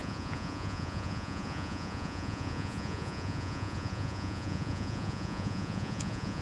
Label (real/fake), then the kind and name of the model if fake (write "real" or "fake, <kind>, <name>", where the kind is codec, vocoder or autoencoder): fake, vocoder, Vocos